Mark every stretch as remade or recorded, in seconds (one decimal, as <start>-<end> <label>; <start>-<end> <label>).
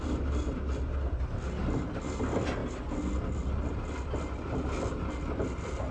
0.0-5.9 recorded